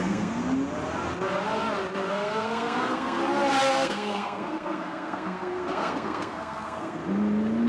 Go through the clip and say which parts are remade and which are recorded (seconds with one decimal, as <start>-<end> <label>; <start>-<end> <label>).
0.0-0.4 remade; 0.4-2.1 recorded; 2.1-3.2 remade; 3.2-3.7 recorded; 3.7-7.0 remade; 7.0-7.7 recorded